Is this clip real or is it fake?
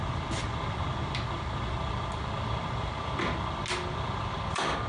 real